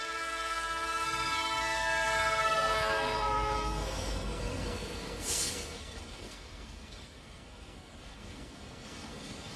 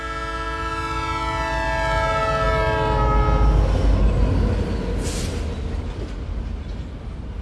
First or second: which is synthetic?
first